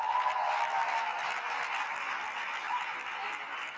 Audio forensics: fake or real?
real